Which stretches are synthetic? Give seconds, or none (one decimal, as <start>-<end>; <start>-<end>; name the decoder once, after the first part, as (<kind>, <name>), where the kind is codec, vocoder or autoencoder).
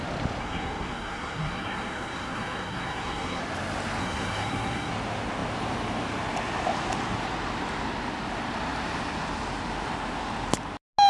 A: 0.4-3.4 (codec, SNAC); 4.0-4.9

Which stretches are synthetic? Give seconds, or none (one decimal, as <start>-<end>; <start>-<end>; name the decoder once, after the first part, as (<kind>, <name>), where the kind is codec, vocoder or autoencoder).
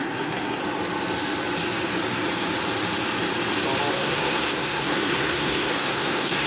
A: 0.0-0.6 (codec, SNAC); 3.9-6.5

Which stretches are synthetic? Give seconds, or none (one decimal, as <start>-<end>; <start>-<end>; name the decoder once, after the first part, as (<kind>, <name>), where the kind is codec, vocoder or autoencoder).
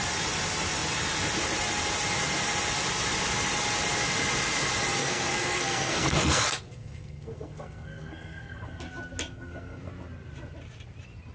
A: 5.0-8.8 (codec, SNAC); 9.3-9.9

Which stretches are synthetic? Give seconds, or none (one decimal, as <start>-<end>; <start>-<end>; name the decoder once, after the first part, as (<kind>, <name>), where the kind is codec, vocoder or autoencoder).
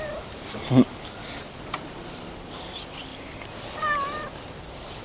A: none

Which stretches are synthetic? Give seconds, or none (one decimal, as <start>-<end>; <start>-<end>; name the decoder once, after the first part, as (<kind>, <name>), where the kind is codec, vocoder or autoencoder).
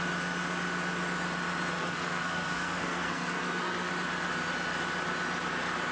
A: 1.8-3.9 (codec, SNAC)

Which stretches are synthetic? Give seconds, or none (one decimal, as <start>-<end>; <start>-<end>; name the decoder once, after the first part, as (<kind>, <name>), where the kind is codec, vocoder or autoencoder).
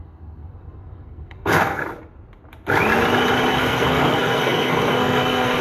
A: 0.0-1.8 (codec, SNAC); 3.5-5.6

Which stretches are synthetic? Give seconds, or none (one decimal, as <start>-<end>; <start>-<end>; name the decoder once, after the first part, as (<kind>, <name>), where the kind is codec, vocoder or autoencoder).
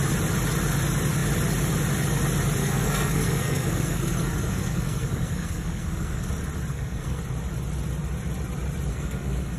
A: 2.6-6.3 (codec, SNAC); 6.7-7.2; 8.9-9.6